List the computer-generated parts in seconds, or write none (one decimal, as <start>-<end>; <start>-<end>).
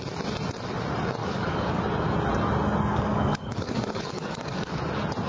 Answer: 1.2-1.8; 2.9-4.8